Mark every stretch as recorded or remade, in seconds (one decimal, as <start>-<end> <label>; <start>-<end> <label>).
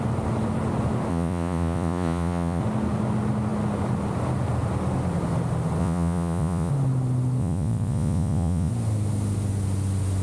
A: 0.0-1.1 recorded; 1.1-2.6 remade; 2.6-5.8 recorded; 5.8-6.7 remade; 6.7-7.4 recorded; 7.4-8.7 remade; 8.7-10.2 recorded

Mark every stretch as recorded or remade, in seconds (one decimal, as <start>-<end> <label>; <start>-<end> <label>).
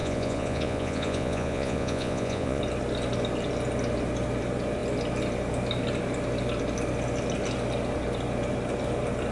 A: 0.0-2.6 remade; 2.6-9.3 recorded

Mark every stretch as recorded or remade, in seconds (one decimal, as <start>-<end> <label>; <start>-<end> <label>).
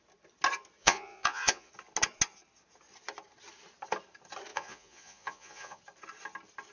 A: 0.0-0.8 recorded; 0.8-1.7 remade; 1.7-4.5 recorded; 4.5-5.8 remade; 5.8-6.7 recorded